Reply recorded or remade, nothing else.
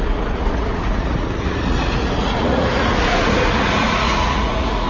remade